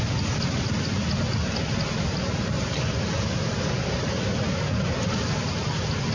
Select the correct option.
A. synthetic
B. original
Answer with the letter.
B